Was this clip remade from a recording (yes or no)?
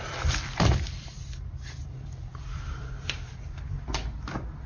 yes